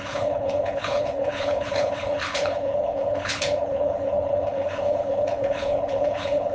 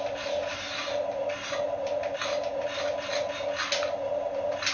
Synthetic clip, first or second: first